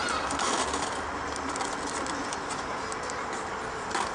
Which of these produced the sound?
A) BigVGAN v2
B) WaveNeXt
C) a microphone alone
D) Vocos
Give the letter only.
C